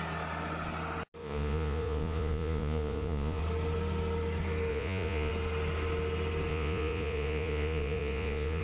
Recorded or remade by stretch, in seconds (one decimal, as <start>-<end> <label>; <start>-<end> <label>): 0.0-1.2 recorded; 1.2-3.4 remade; 3.4-4.7 recorded; 4.7-5.3 remade; 5.3-6.5 recorded; 6.5-8.6 remade